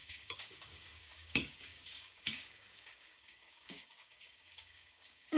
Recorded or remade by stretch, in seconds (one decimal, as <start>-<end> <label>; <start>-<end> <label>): 0.0-5.4 remade

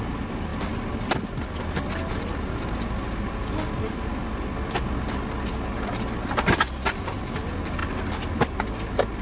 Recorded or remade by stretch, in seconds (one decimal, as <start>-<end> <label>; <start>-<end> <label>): 0.0-9.2 recorded

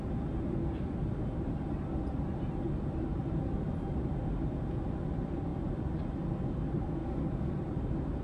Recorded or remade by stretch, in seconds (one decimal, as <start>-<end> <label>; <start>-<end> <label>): 0.0-7.0 recorded; 7.0-7.5 remade; 7.5-8.2 recorded